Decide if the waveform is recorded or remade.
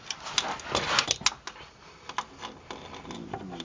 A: recorded